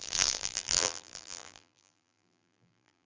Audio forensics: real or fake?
fake